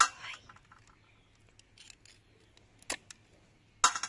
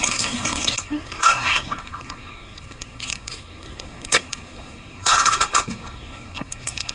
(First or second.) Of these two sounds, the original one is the first